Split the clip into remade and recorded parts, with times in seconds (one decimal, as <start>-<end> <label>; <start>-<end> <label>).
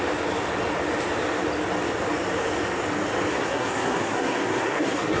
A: 0.0-3.3 recorded; 3.3-5.2 remade